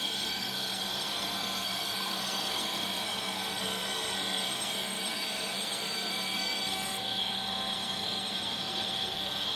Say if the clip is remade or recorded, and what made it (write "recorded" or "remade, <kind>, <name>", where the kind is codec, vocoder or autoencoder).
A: remade, codec, SNAC